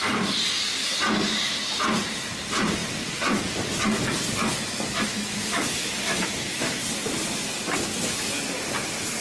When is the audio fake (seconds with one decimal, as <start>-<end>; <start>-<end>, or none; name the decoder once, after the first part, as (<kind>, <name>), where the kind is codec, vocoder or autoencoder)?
5.1-6.8 (autoencoder, DAC-VAE)